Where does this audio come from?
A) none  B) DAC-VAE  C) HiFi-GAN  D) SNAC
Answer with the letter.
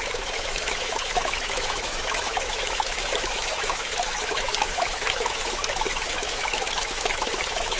B